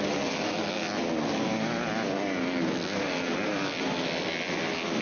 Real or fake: real